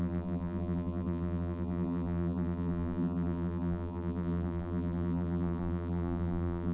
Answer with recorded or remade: remade